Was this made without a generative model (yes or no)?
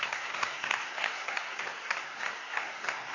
no